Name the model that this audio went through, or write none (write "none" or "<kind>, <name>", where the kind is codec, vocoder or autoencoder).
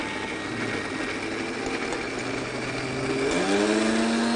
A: none